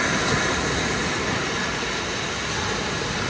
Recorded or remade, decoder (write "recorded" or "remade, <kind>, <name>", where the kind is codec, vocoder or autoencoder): recorded